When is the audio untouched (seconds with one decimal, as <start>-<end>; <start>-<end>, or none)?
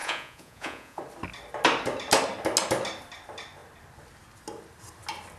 1.0-5.4